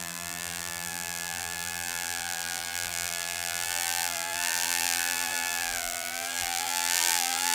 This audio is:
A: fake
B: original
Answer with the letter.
A